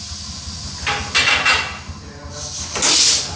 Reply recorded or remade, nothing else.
recorded